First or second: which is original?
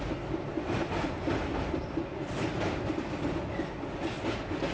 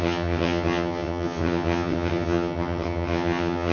first